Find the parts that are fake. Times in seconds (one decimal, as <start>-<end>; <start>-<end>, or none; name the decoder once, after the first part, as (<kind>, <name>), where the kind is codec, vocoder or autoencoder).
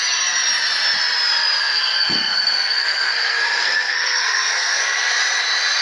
1.6-5.1 (codec, SNAC)